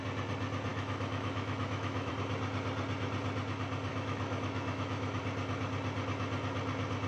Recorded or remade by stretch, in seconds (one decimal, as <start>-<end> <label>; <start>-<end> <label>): 0.0-0.7 recorded; 0.7-2.1 remade; 2.1-3.9 recorded; 3.9-5.2 remade; 5.2-7.1 recorded